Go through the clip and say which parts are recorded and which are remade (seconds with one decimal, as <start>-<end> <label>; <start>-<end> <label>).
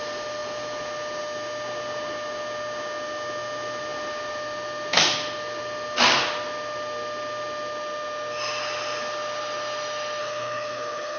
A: 0.0-10.2 recorded; 10.2-11.2 remade